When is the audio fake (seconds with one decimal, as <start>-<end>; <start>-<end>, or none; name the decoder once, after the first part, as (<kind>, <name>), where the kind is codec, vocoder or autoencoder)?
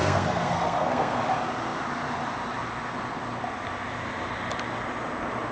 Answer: 0.0-1.2 (codec, SNAC)